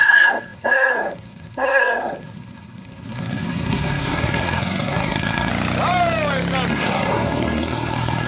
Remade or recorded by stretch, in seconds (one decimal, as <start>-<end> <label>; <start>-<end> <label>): 0.0-5.5 remade; 5.5-6.7 recorded; 6.7-8.3 remade